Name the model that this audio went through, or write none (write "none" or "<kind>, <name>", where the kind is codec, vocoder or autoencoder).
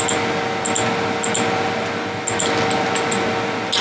none